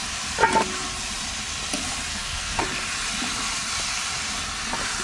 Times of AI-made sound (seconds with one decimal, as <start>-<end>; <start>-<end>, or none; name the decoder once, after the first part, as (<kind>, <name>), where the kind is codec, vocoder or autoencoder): 2.1-2.6 (codec, SNAC)